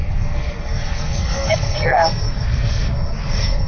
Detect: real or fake fake